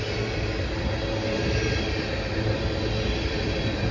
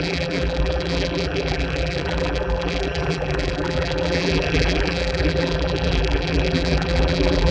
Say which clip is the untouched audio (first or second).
first